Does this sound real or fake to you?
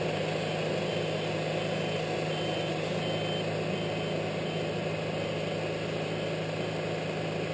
real